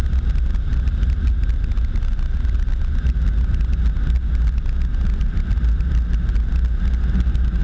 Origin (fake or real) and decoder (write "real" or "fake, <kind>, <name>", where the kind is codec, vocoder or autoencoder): real